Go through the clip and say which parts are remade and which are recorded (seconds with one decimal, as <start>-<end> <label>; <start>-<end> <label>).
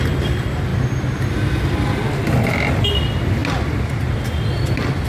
0.0-5.1 recorded